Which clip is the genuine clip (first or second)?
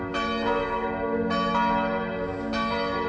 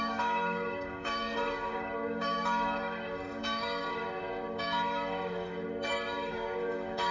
first